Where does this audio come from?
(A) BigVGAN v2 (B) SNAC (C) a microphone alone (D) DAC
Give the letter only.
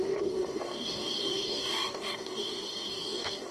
D